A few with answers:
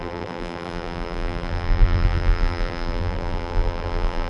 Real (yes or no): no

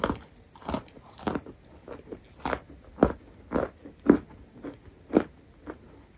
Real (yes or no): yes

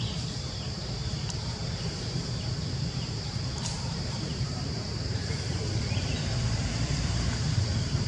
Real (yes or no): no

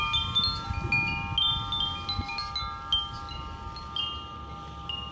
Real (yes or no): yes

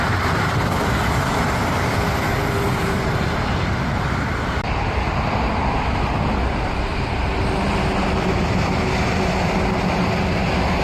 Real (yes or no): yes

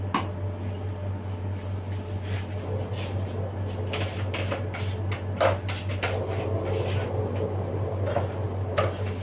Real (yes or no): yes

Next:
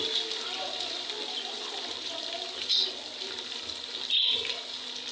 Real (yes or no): no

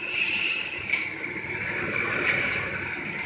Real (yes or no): no